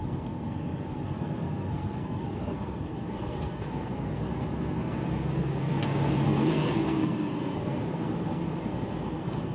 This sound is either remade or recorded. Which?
remade